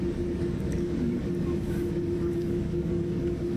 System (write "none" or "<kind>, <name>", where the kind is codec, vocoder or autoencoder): codec, DAC